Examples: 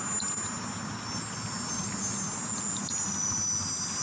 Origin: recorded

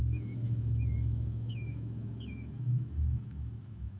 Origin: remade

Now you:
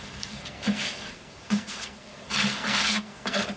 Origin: remade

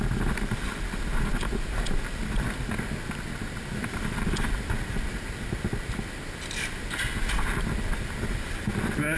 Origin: recorded